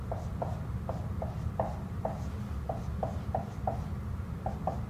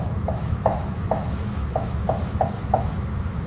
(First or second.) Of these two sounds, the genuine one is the first